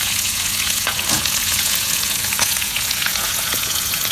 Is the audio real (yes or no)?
no